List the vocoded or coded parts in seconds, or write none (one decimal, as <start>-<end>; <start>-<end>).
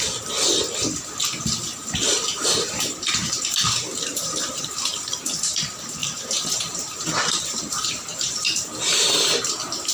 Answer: 1.8-3.6; 4.1-4.7; 6.0-9.9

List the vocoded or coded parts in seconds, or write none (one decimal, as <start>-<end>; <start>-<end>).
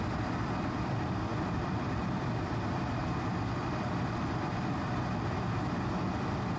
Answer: 1.3-2.2; 3.3-4.2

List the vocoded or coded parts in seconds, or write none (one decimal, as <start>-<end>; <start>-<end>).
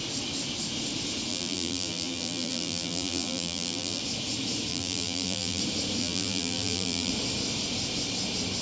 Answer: 1.3-4.0; 4.7-5.6; 6.0-7.1